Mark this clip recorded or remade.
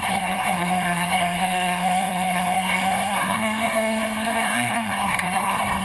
remade